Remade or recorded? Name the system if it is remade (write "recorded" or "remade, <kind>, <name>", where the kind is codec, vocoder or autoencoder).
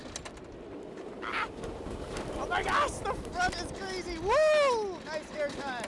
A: recorded